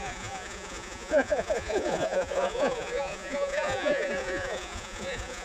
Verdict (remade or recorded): remade